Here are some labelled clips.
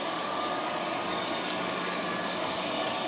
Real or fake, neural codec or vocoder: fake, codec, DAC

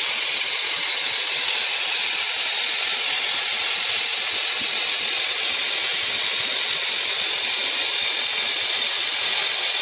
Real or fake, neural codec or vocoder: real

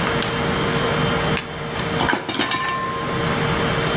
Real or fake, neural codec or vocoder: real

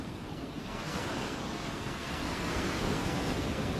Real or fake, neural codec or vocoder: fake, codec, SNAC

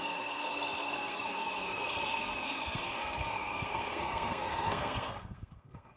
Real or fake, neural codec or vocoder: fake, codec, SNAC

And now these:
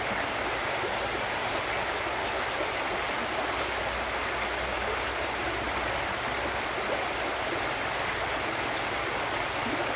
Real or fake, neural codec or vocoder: real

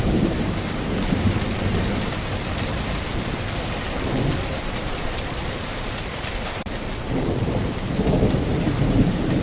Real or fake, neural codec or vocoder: fake, vocoder, BigVGAN v2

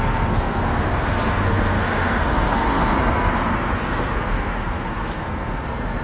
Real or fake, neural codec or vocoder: fake, codec, SNAC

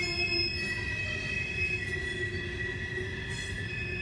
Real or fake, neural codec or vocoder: real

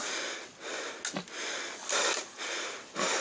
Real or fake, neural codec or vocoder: real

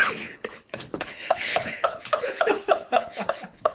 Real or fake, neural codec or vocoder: fake, codec, HILCodec